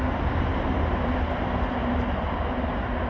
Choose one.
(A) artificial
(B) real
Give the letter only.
B